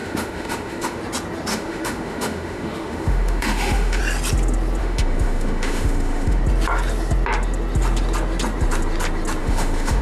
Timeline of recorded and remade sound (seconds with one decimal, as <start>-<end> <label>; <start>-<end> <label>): 0.0-1.0 remade; 1.0-1.5 recorded; 1.5-4.0 remade; 4.0-4.8 recorded; 4.8-6.4 remade; 6.4-9.4 recorded; 9.4-10.0 remade